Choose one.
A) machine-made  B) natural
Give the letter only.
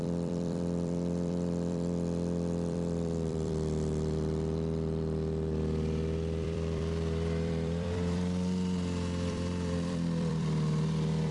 A